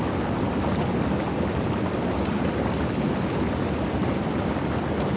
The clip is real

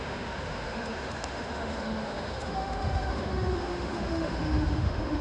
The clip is fake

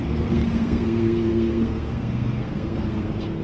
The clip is fake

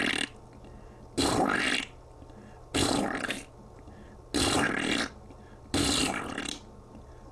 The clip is real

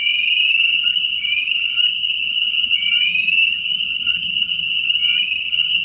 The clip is fake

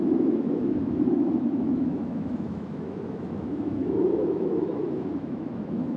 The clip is fake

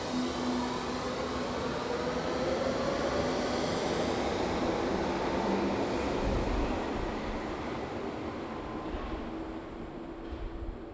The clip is real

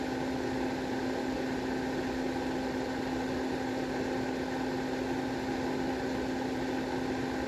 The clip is real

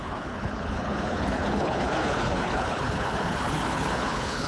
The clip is fake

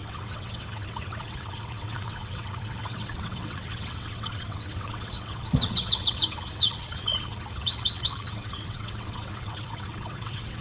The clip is fake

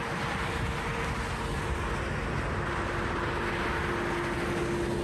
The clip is real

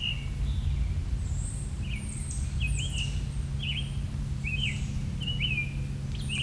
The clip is real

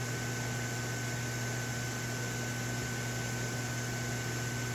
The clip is real